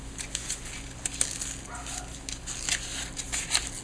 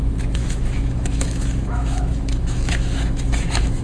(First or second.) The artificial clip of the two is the second